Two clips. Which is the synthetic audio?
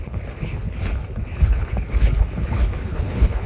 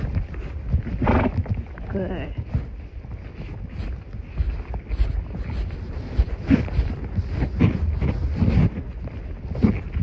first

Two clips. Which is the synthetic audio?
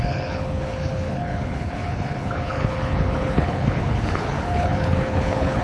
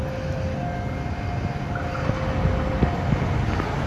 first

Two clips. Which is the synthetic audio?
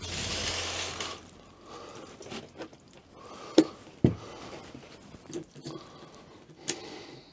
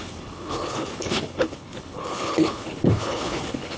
second